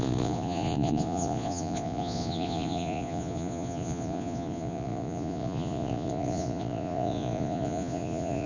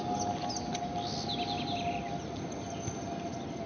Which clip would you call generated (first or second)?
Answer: first